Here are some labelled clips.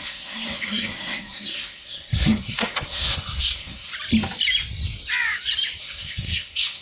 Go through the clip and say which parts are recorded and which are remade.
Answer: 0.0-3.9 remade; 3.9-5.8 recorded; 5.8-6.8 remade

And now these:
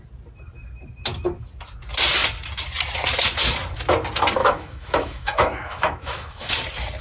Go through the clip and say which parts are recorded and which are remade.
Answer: 0.0-4.4 recorded; 4.4-6.5 remade; 6.5-7.0 recorded

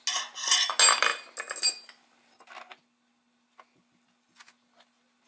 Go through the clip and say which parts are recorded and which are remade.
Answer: 0.0-5.3 recorded

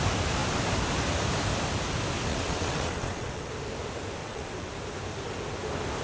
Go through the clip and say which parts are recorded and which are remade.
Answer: 0.0-2.3 recorded; 2.3-3.5 remade; 3.5-4.2 recorded; 4.2-4.7 remade; 4.7-6.0 recorded

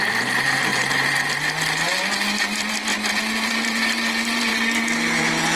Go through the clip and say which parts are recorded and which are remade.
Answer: 0.0-0.7 recorded; 0.7-1.4 remade; 1.4-2.9 recorded; 2.9-4.5 remade; 4.5-5.6 recorded

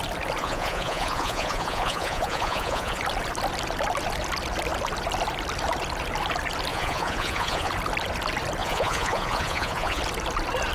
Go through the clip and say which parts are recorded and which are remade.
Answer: 0.0-0.4 recorded; 0.4-3.0 remade; 3.0-6.7 recorded; 6.7-7.7 remade; 7.7-8.6 recorded; 8.6-10.0 remade; 10.0-10.7 recorded

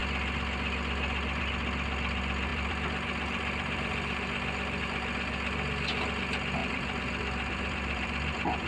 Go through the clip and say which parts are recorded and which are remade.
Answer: 0.0-2.5 recorded; 2.5-4.8 remade; 4.8-6.6 recorded; 6.6-8.7 remade